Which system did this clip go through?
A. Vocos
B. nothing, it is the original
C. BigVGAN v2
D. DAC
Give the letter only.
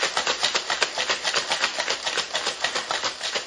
B